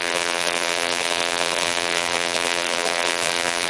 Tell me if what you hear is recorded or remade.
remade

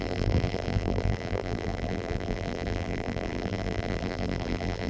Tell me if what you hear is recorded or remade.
remade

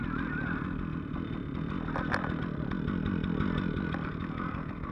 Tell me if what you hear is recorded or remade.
remade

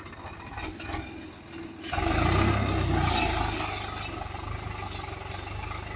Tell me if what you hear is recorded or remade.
recorded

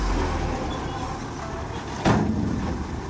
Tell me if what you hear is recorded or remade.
recorded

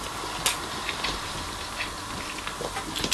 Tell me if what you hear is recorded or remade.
recorded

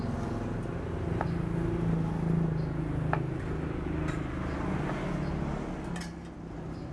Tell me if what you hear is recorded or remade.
recorded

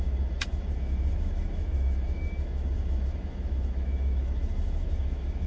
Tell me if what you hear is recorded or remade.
remade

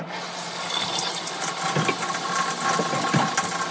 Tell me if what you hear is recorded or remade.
recorded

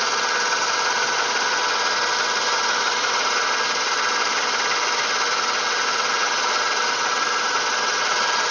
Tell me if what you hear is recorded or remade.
recorded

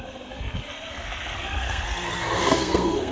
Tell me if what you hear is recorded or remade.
remade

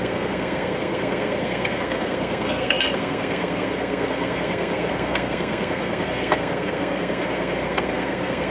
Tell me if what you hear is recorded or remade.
remade